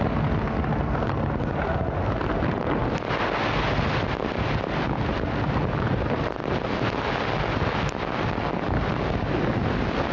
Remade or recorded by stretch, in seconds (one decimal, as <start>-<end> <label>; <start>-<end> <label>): 0.0-10.1 recorded

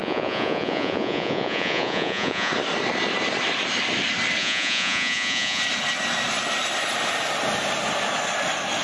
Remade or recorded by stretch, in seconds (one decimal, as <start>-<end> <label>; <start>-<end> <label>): 0.0-2.5 remade; 2.5-4.4 recorded; 4.4-5.6 remade; 5.6-8.8 recorded

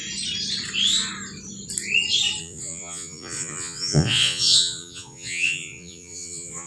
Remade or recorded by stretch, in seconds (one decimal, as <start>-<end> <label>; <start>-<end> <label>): 0.0-2.4 recorded; 2.4-6.7 remade